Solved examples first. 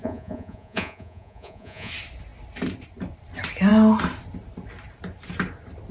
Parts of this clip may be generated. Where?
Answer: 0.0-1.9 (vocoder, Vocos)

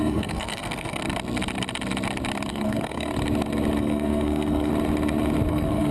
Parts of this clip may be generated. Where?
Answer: 0.0-1.0 (codec, SNAC); 2.5-3.1; 3.8-4.7; 5.5-5.9

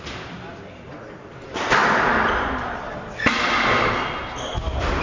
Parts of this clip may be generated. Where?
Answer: none

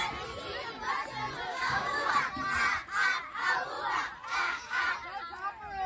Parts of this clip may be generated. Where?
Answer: 1.5-2.1 (codec, DAC); 4.3-4.8

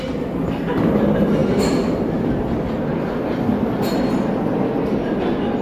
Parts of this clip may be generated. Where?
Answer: none

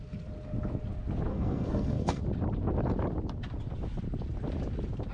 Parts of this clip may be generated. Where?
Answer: 1.3-2.2 (codec, SNAC)

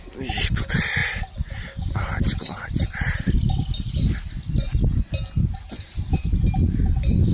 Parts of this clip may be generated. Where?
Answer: none

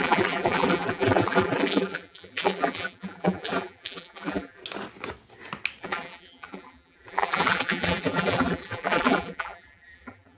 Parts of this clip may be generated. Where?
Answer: 0.0-4.6 (vocoder, BigVGAN v2); 5.8-10.4